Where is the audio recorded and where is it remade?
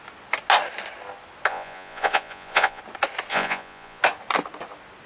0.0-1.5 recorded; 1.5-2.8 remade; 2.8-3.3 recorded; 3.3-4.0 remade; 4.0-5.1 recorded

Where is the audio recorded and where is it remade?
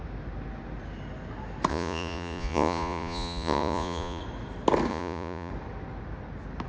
0.0-1.7 recorded; 1.7-4.2 remade; 4.2-4.9 recorded; 4.9-5.5 remade; 5.5-6.7 recorded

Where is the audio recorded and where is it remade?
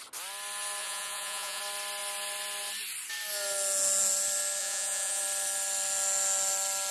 0.0-0.8 recorded; 0.8-1.6 remade; 1.6-4.6 recorded; 4.6-5.2 remade; 5.2-6.9 recorded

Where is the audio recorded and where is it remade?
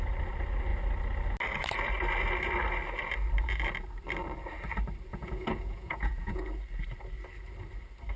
0.0-5.1 recorded; 5.1-6.4 remade; 6.4-8.2 recorded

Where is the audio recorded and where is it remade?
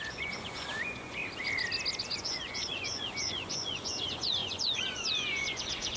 0.0-1.2 remade; 1.2-2.0 recorded; 2.0-6.0 remade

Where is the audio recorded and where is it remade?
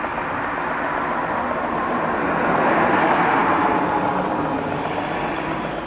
0.0-5.9 recorded